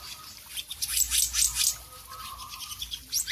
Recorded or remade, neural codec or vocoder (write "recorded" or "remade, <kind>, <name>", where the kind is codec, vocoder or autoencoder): recorded